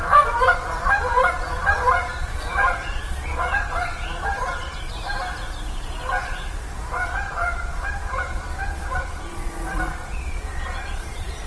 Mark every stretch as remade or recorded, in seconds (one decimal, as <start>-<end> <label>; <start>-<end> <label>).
0.0-4.9 remade; 4.9-6.9 recorded; 6.9-11.5 remade